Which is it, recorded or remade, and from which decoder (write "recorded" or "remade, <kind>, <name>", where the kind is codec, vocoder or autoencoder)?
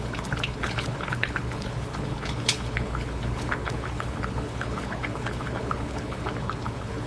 remade, codec, HILCodec